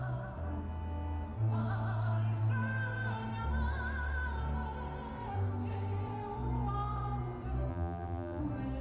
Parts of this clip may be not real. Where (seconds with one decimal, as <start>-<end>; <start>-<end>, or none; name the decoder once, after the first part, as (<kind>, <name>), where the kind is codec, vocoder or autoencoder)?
7.7-8.4 (vocoder, BigVGAN v2)